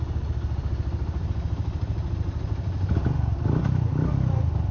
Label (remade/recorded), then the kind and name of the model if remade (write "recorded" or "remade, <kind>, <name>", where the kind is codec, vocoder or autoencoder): recorded